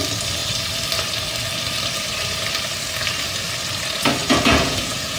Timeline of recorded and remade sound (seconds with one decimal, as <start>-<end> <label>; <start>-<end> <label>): 0.0-4.2 recorded; 4.2-5.2 remade